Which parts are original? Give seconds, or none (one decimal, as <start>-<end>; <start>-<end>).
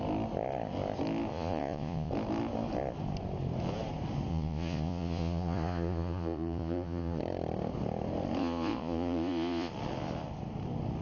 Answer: 0.0-1.3; 2.1-4.3; 7.2-8.4; 9.7-11.0